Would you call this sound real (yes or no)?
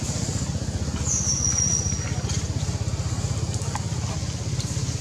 yes